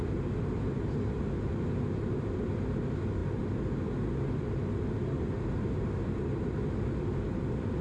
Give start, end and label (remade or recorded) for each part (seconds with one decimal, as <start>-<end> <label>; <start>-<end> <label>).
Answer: 0.0-7.8 recorded